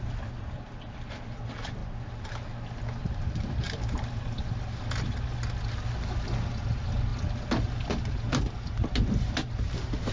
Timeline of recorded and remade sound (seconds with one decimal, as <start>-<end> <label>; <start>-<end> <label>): 0.0-10.1 recorded